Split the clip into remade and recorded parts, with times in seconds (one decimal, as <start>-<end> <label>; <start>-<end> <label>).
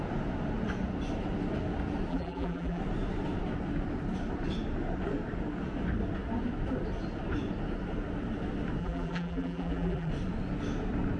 0.0-2.1 recorded; 2.1-2.8 remade; 2.8-8.8 recorded; 8.8-10.1 remade; 10.1-11.2 recorded